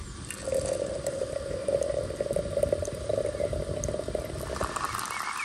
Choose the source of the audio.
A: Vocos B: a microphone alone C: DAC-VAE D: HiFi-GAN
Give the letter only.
B